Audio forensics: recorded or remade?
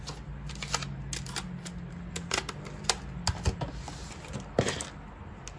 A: recorded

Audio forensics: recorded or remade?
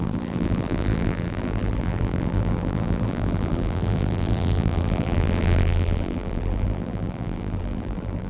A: remade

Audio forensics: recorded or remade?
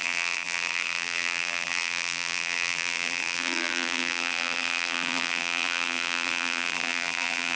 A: remade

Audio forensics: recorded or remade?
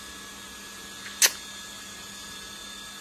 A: recorded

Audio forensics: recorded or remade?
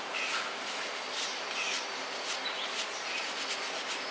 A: recorded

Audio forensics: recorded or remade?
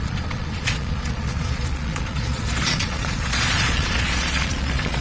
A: remade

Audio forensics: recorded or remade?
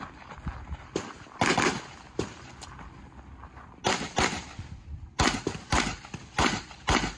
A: recorded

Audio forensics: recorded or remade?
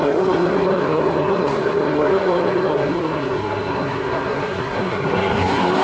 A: remade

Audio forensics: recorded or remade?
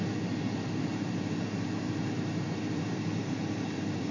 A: remade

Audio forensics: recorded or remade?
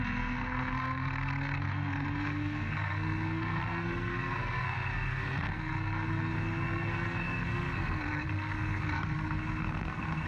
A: remade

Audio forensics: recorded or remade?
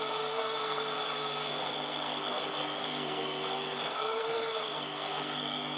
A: remade